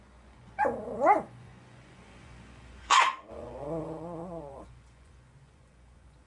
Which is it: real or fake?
fake